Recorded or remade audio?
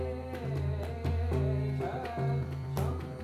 recorded